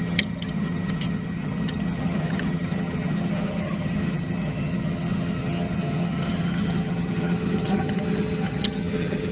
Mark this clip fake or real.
fake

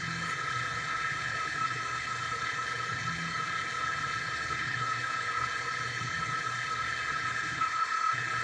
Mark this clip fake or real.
fake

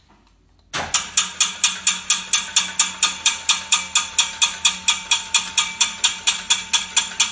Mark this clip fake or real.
real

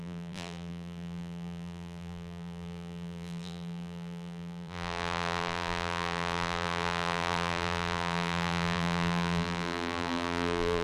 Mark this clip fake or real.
fake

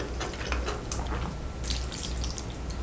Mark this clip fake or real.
real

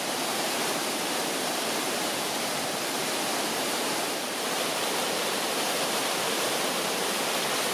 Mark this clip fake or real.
fake